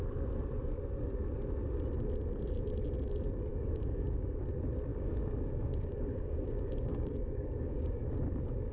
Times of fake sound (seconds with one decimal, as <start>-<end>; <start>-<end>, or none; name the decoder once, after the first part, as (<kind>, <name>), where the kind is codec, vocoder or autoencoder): 3.5-4.4 (codec, DAC); 4.9-8.1